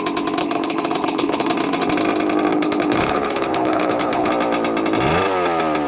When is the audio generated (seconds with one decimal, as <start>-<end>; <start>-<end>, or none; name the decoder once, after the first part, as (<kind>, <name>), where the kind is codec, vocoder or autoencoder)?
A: 0.4-1.5 (codec, HILCodec); 2.5-4.3